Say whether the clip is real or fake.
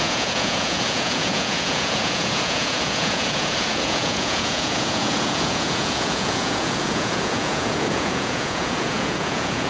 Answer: fake